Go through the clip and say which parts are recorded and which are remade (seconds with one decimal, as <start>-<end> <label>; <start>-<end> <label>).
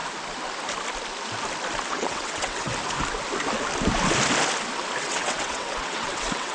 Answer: 0.0-1.9 recorded; 1.9-2.7 remade; 2.7-5.0 recorded; 5.0-6.5 remade